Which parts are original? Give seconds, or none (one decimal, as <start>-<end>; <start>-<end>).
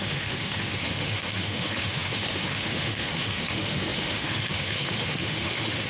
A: none